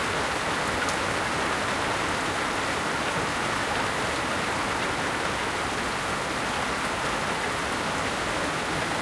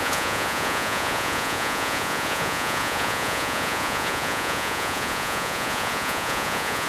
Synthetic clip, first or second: second